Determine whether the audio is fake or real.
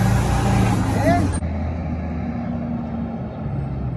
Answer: real